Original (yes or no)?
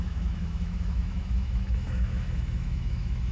no